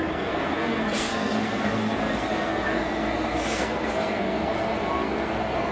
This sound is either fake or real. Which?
fake